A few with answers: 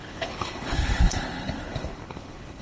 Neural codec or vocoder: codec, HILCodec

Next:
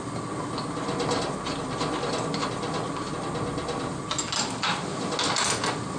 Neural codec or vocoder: none